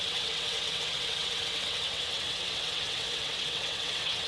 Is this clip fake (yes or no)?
yes